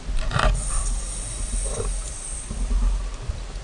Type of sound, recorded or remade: recorded